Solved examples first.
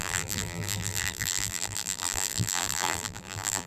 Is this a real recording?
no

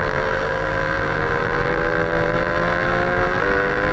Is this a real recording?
no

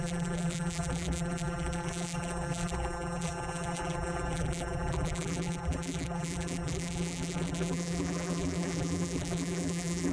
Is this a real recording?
no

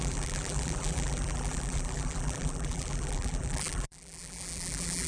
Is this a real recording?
no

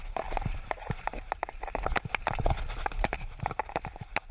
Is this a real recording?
yes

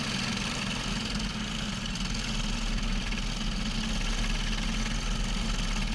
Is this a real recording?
yes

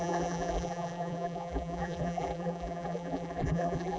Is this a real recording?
no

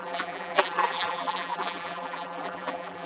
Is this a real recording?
no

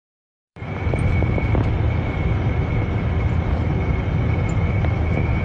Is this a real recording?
yes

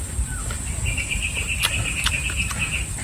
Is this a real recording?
yes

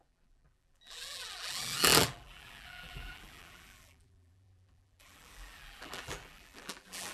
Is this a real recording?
no